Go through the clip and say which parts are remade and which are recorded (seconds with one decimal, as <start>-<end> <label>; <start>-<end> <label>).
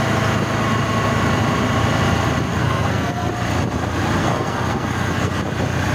0.0-2.5 recorded; 2.5-3.3 remade; 3.3-4.2 recorded; 4.2-5.4 remade; 5.4-5.9 recorded